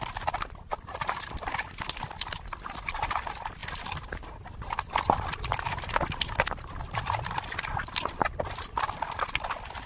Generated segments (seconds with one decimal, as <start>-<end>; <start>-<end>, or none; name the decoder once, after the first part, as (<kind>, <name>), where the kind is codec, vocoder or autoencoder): none